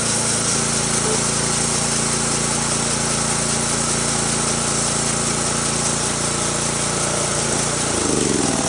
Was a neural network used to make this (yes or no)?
no